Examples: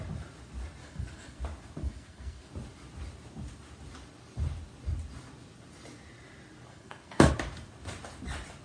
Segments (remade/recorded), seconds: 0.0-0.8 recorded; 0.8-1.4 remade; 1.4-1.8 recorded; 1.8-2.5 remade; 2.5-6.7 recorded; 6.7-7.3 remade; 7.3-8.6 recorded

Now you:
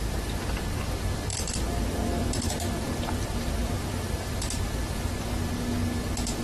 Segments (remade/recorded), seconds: 0.0-1.3 recorded; 1.3-5.1 remade; 5.1-6.4 recorded

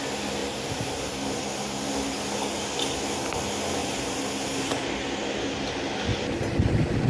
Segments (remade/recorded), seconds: 0.0-0.4 recorded; 0.4-1.4 remade; 1.4-3.8 recorded; 3.8-5.2 remade; 5.2-7.1 recorded

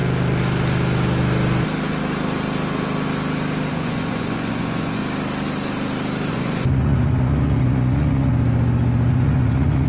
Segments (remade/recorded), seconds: 0.0-3.7 recorded; 3.7-5.0 remade; 5.0-6.3 recorded; 6.3-8.3 remade; 8.3-9.1 recorded; 9.1-9.9 remade

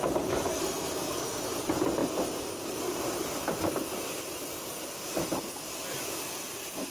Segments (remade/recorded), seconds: 0.0-0.5 recorded; 0.5-1.5 remade; 1.5-6.9 recorded

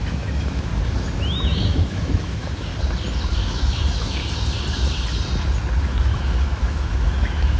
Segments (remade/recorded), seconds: 0.0-0.7 remade; 0.7-1.2 recorded; 1.2-2.7 remade; 2.7-3.3 recorded; 3.3-4.2 remade; 4.2-5.8 recorded; 5.8-7.6 remade

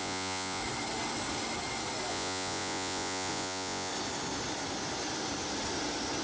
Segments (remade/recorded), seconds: 0.0-0.6 remade; 0.6-2.1 recorded; 2.1-3.9 remade; 3.9-6.2 recorded

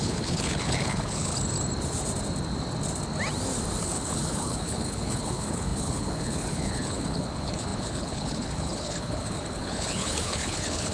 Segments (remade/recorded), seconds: 0.0-1.3 remade; 1.3-3.8 recorded; 3.8-10.9 remade